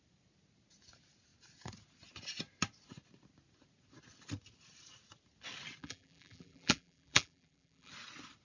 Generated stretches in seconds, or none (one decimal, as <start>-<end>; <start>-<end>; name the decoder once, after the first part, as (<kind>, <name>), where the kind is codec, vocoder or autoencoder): 5.8-7.9 (vocoder, BigVGAN v2)